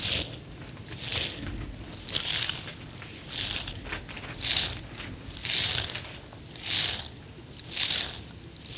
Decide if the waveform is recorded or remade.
recorded